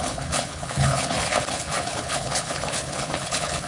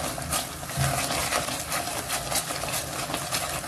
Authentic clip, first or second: second